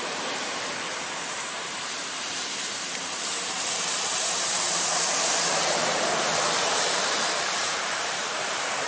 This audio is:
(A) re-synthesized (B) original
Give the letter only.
A